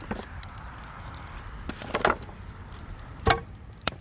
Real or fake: real